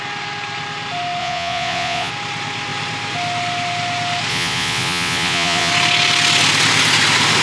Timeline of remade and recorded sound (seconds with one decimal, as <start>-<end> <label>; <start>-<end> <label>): 0.0-1.2 recorded; 1.2-2.1 remade; 2.1-4.3 recorded; 4.3-5.7 remade; 5.7-7.4 recorded

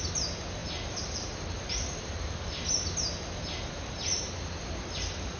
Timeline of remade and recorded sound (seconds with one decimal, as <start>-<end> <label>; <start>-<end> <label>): 0.0-5.4 recorded

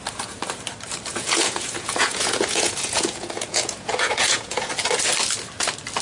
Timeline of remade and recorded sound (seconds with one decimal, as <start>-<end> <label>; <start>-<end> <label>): 0.0-1.1 recorded; 1.1-4.7 remade; 4.7-6.0 recorded

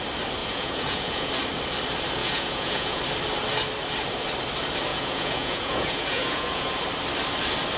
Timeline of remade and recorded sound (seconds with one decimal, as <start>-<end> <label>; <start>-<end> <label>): 0.0-0.4 recorded; 0.4-1.3 remade; 1.3-2.2 recorded; 2.2-3.0 remade; 3.0-4.9 recorded; 4.9-6.7 remade; 6.7-7.8 recorded

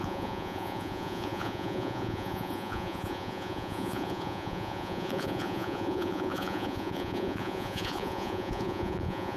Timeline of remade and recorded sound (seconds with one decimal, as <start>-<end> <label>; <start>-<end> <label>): 0.0-9.4 remade

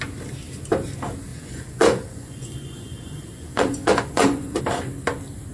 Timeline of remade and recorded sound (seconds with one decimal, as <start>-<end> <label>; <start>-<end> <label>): 0.0-1.3 recorded; 1.3-4.6 remade; 4.6-5.5 recorded